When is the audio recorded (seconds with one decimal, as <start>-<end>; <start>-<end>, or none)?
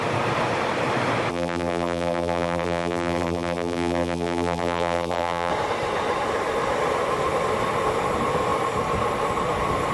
0.0-1.3; 5.5-9.9